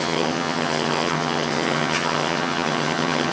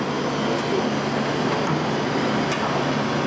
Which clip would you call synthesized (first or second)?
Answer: first